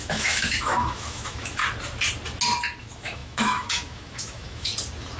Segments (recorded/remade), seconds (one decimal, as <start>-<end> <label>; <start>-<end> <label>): 0.0-1.6 remade; 1.6-2.8 recorded; 2.8-4.7 remade; 4.7-5.2 recorded